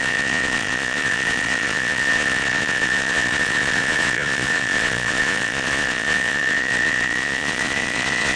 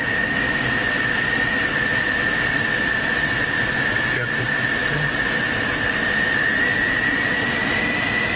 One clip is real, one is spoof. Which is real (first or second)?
second